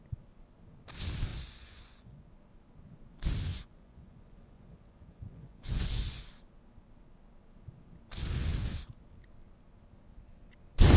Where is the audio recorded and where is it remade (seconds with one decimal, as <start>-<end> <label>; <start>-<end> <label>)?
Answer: 0.0-1.3 recorded; 1.3-2.3 remade; 2.3-3.5 recorded; 3.5-6.2 remade; 6.2-11.0 recorded